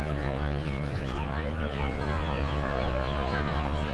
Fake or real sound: fake